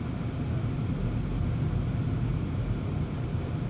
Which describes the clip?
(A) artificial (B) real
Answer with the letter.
B